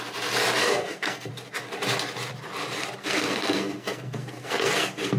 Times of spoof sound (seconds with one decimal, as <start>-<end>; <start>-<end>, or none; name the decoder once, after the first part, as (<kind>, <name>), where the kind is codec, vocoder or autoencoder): 0.6-1.3 (codec, SNAC); 3.0-5.2